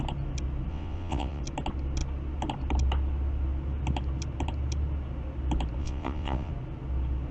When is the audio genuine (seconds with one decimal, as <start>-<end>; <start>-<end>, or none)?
0.0-0.7; 1.4-5.8; 6.5-7.3